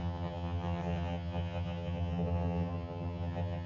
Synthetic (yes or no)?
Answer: yes